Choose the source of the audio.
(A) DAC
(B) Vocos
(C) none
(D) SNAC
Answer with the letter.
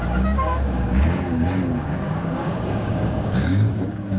A